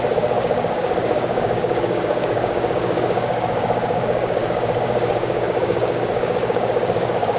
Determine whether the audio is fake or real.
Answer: fake